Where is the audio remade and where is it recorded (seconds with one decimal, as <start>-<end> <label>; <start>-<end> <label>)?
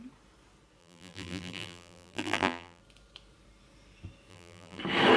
0.0-0.8 recorded; 0.8-2.8 remade; 2.8-4.3 recorded; 4.3-4.8 remade; 4.8-5.2 recorded